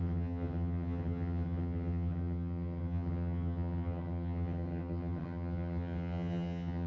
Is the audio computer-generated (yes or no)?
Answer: yes